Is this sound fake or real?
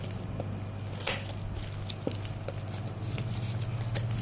real